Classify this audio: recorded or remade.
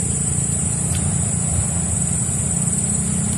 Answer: recorded